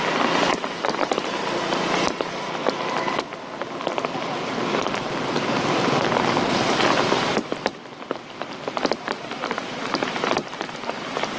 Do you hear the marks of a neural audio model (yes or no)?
no